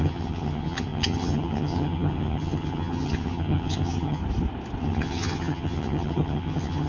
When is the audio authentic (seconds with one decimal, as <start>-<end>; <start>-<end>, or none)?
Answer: 4.2-4.8